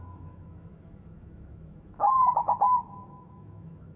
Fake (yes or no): yes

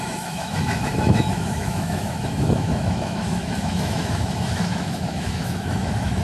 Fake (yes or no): yes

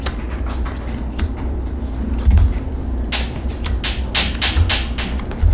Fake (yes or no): no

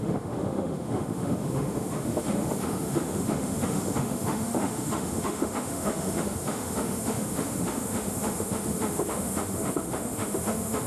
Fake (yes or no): yes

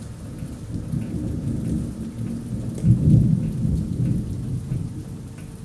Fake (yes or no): no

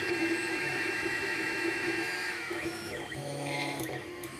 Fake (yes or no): yes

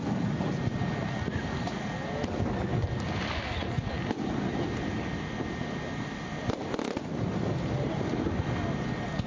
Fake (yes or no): no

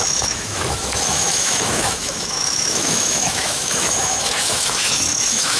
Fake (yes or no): yes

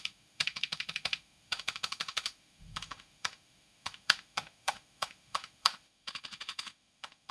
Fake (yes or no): yes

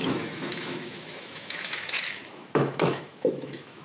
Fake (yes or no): yes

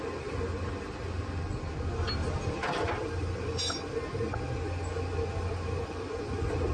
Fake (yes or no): no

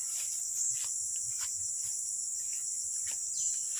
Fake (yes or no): no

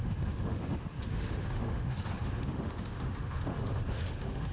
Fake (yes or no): yes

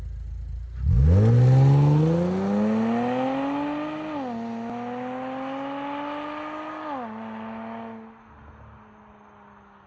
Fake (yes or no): no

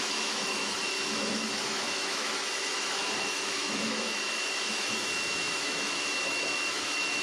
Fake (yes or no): yes